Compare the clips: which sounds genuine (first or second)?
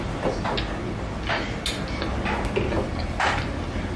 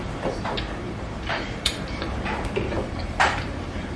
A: first